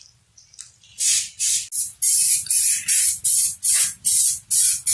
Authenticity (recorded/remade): recorded